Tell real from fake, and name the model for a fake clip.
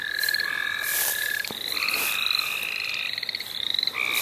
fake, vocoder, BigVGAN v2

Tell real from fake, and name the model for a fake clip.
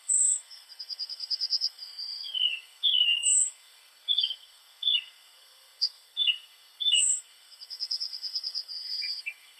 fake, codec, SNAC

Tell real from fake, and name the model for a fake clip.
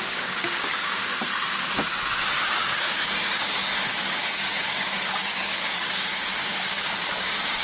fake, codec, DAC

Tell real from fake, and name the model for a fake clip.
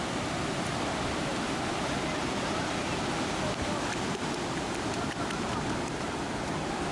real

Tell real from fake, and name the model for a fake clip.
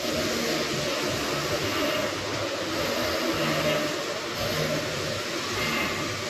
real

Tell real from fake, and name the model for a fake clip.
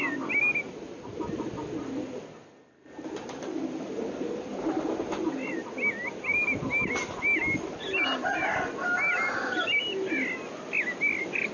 real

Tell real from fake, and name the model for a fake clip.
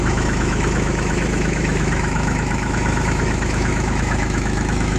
fake, autoencoder, DAC-VAE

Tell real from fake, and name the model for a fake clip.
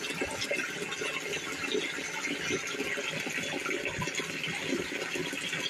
real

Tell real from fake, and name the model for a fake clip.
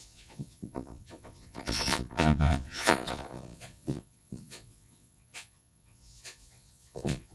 fake, vocoder, Vocos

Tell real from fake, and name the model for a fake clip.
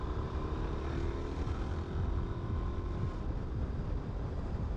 real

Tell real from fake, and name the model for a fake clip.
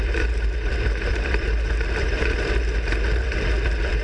real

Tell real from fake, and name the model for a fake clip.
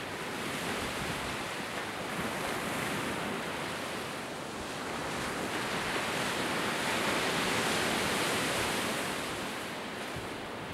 real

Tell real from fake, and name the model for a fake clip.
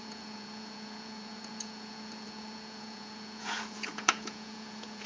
fake, vocoder, Vocos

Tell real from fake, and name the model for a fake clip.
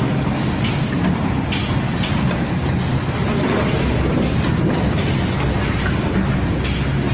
real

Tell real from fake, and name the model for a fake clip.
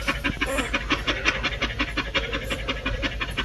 real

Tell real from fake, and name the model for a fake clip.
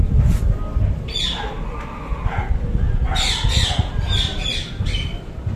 real